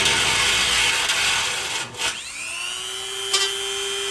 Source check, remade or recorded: recorded